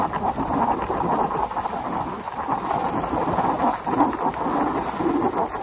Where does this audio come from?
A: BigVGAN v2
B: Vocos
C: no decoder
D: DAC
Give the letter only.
C